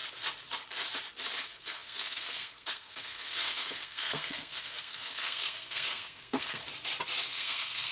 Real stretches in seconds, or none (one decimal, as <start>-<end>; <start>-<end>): 0.0-1.4; 6.6-7.3